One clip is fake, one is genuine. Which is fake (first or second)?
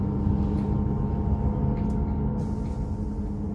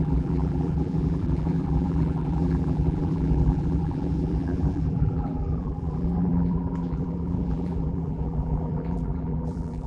second